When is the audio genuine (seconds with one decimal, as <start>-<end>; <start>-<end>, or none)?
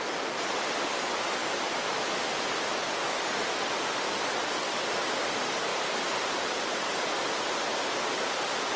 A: 0.0-5.7; 6.8-8.8